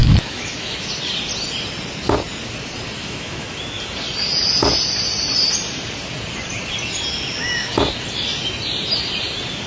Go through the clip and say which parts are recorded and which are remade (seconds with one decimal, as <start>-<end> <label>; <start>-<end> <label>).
0.0-0.9 remade; 0.9-3.0 recorded; 3.0-3.8 remade; 3.8-9.7 recorded